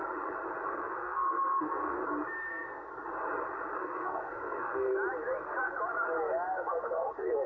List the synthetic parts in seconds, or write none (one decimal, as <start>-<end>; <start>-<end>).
0.7-2.0; 2.5-2.9; 3.8-4.9; 6.6-7.5